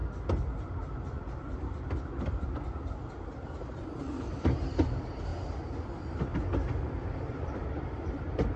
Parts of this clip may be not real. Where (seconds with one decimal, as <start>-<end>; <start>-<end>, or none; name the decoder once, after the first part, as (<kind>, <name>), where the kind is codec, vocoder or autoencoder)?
4.3-5.3 (vocoder, BigVGAN v2); 6.8-8.6